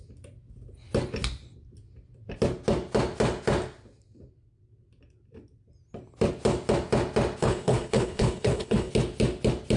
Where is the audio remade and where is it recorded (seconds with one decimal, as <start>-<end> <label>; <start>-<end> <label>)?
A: 0.0-7.4 recorded; 7.4-8.9 remade; 8.9-9.8 recorded